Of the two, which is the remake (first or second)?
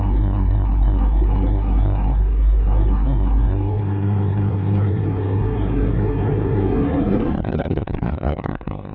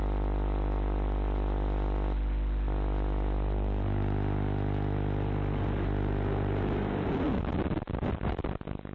first